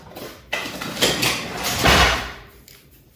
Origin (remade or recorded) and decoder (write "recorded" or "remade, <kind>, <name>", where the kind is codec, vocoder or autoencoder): recorded